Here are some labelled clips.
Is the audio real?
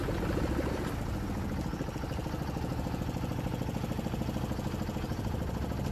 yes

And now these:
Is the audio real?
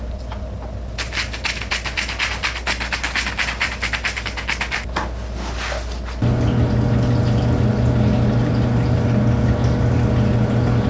yes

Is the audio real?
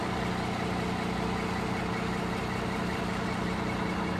yes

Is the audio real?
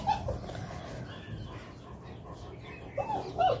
yes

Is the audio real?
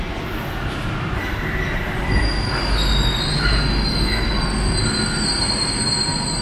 yes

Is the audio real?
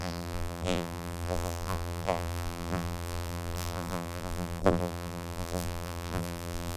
no